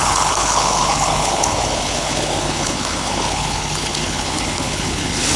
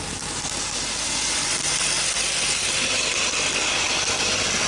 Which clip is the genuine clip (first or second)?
second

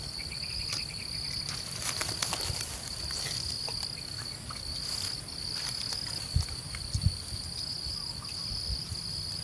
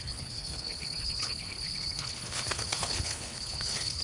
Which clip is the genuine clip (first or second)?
first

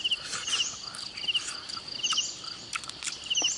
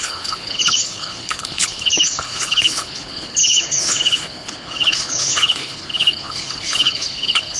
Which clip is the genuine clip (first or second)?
first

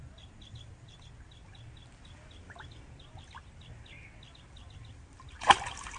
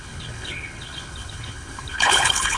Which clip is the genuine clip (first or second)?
first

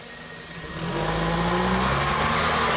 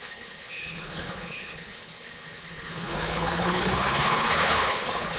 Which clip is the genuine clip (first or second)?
first